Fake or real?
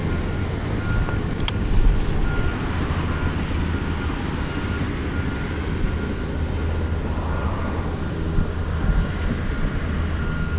real